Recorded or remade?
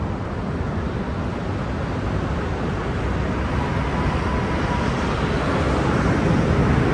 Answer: recorded